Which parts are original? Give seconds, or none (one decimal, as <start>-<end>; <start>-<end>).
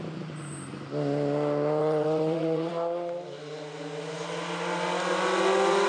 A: 0.0-1.8; 2.7-5.9